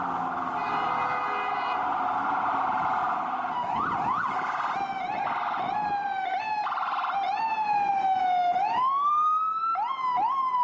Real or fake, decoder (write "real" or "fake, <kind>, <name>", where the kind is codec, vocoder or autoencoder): real